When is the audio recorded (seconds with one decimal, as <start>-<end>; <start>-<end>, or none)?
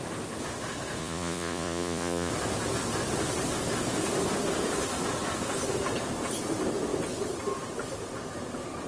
0.0-1.0; 2.3-8.9